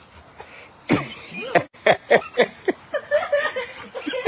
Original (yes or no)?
yes